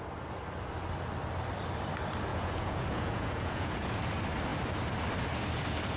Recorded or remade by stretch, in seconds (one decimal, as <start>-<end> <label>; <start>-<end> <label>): 0.0-2.3 recorded; 2.3-4.0 remade; 4.0-6.0 recorded